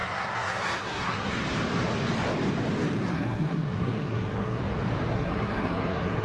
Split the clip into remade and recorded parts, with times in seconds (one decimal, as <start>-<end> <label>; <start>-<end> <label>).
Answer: 0.0-1.4 remade; 1.4-3.1 recorded; 3.1-4.6 remade; 4.6-5.1 recorded; 5.1-6.2 remade